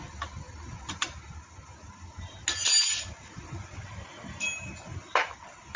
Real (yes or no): yes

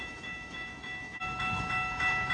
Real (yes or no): no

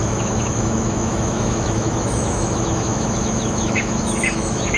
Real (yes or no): no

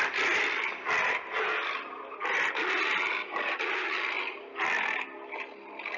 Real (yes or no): yes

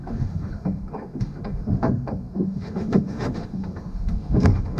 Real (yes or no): no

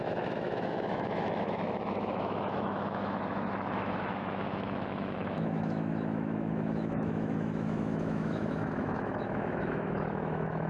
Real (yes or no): no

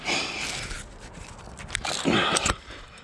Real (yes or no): yes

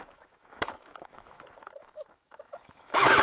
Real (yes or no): no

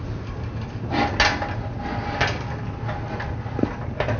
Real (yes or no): yes